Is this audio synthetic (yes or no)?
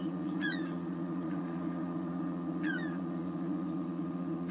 yes